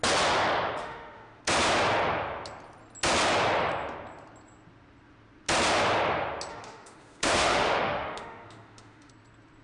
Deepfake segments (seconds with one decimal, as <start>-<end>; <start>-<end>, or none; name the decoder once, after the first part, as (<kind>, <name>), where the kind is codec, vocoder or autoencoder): 0.8-1.4 (autoencoder, DAC-VAE); 6.5-9.1